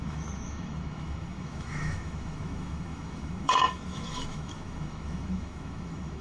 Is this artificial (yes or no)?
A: yes